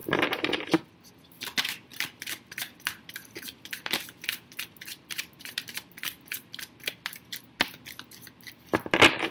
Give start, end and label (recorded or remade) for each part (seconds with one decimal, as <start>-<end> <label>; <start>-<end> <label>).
0.0-0.9 remade; 0.9-1.9 recorded; 1.9-6.9 remade; 6.9-9.3 recorded